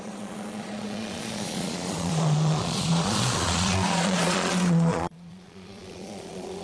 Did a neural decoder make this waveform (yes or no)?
yes